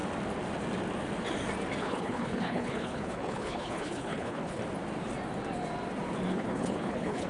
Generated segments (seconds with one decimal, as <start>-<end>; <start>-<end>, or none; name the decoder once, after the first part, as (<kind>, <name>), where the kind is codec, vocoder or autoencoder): 1.8-4.6 (codec, HILCodec); 6.3-7.3